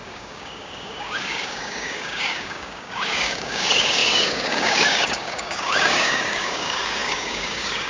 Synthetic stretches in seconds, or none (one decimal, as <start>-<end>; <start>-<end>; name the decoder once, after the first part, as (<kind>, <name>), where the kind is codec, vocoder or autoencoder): 0.0-7.9 (codec, DAC)